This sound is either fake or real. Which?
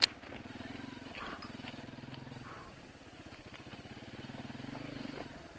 real